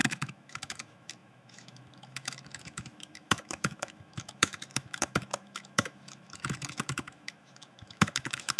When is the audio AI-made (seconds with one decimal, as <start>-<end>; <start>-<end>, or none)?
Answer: 0.0-8.6